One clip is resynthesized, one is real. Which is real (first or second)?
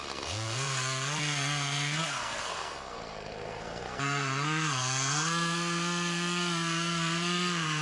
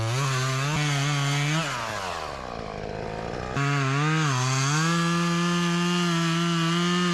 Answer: second